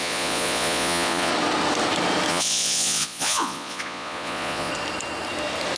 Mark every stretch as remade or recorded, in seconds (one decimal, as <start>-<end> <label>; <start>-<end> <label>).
0.0-1.3 remade; 1.3-2.3 recorded; 2.3-4.7 remade; 4.7-5.8 recorded